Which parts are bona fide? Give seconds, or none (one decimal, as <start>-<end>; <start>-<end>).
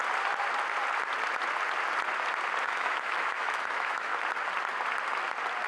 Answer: 0.0-2.6; 4.1-5.7